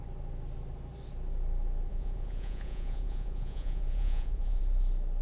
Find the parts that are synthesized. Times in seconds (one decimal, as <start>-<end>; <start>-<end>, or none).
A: 1.9-4.6